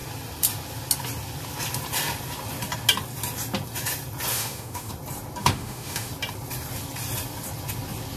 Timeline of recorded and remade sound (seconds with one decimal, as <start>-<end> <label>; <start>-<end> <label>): 0.0-4.3 recorded; 4.3-4.9 remade; 4.9-5.4 recorded; 5.4-6.1 remade; 6.1-8.2 recorded